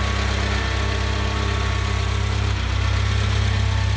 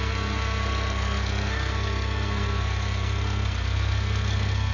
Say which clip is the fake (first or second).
second